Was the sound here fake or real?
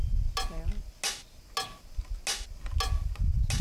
real